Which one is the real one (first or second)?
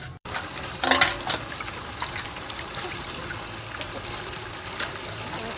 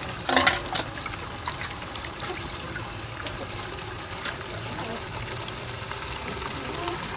first